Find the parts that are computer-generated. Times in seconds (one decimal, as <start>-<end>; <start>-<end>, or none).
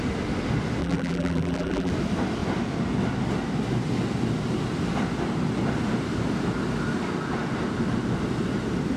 0.8-1.9